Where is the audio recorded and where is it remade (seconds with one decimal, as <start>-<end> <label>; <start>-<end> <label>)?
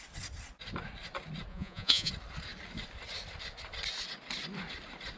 0.0-1.5 recorded; 1.5-2.1 remade; 2.1-5.2 recorded